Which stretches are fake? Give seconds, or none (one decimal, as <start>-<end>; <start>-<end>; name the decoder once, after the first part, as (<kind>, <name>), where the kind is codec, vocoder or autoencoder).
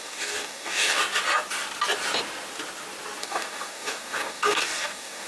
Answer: 0.0-1.0 (codec, DAC); 3.2-5.3